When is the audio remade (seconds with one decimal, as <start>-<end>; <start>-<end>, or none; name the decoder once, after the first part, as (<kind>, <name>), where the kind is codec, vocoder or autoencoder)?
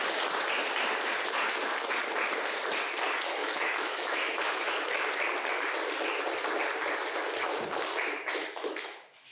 3.4-5.1 (autoencoder, DAC-VAE); 8.4-9.3